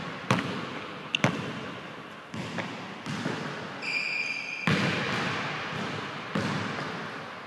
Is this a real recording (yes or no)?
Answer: yes